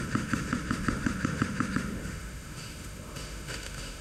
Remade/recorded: remade